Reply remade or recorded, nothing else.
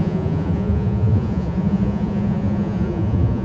remade